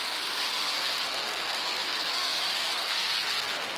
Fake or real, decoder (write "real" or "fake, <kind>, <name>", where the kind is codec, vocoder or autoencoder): fake, codec, SNAC